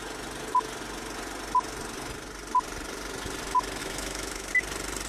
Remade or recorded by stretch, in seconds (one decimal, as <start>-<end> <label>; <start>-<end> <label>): 0.0-3.8 recorded; 3.8-4.5 remade; 4.5-5.1 recorded

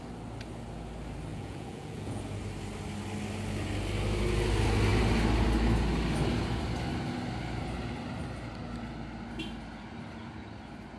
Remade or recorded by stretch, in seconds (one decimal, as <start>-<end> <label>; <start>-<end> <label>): 0.0-1.3 recorded; 1.3-2.2 remade; 2.2-11.0 recorded

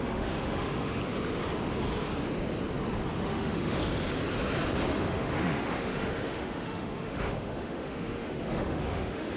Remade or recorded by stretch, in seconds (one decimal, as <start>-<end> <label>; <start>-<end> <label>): 0.0-1.0 remade; 1.0-3.2 recorded; 3.2-3.8 remade; 3.8-4.9 recorded; 4.9-9.4 remade

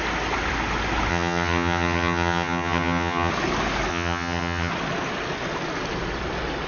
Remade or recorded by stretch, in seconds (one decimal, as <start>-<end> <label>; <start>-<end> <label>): 0.0-1.1 recorded; 1.1-3.3 remade; 3.3-3.9 recorded; 3.9-4.7 remade; 4.7-6.7 recorded

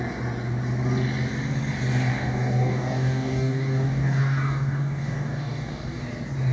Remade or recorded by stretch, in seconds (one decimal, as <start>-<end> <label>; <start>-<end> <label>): 0.0-2.1 recorded; 2.1-6.0 remade; 6.0-6.5 recorded